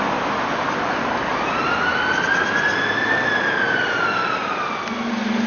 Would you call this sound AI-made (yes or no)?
no